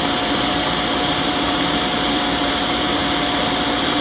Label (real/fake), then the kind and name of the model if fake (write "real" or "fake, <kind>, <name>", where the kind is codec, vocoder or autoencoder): fake, vocoder, BigVGAN v2